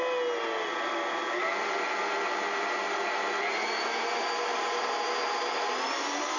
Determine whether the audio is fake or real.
real